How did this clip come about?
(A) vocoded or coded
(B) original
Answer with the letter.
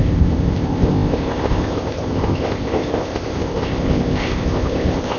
A